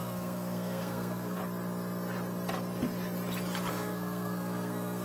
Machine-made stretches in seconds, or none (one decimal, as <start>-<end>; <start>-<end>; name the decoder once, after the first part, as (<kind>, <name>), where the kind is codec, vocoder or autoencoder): 0.0-1.4 (codec, SNAC); 3.7-5.0